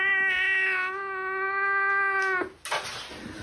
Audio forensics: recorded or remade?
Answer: recorded